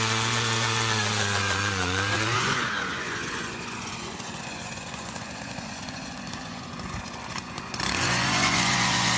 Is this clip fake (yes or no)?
yes